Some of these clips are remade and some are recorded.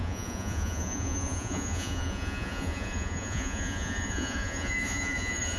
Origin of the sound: remade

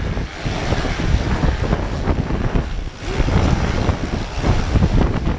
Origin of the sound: recorded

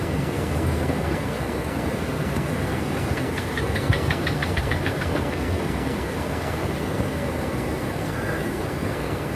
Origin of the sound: remade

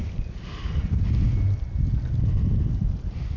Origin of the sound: recorded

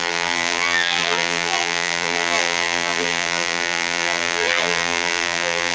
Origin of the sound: remade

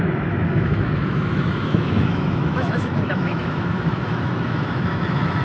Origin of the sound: remade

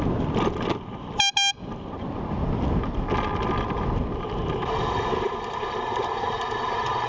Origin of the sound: recorded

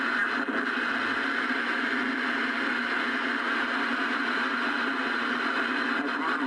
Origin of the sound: recorded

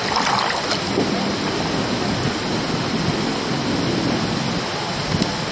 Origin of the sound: recorded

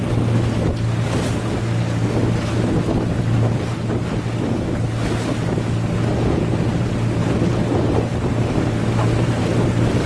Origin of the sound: recorded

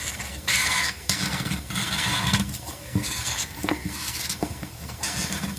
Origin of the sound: remade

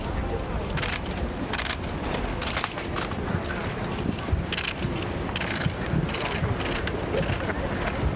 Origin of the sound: recorded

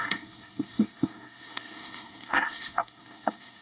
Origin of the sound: remade